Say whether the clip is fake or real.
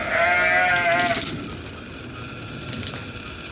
real